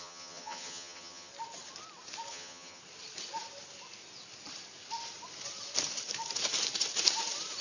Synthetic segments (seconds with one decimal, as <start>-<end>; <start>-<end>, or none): 0.0-1.3; 2.3-2.8